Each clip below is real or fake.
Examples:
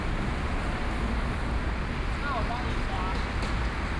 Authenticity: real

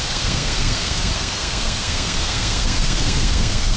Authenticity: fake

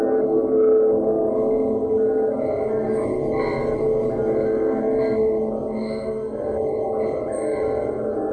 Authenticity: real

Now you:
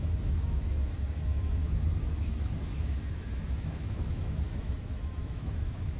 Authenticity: fake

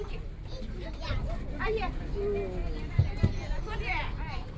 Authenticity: real